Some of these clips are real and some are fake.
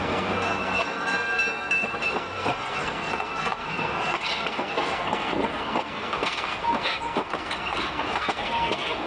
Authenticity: fake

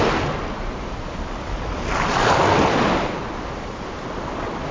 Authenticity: real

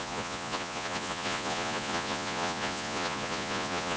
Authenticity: fake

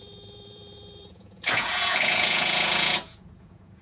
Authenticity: fake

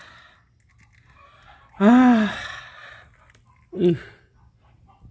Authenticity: real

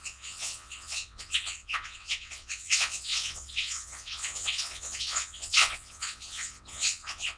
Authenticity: fake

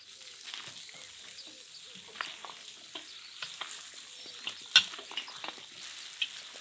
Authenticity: real